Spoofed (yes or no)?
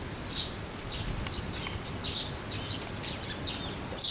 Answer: no